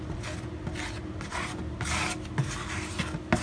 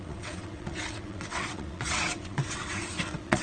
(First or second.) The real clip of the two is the first